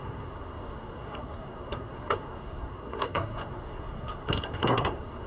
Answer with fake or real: fake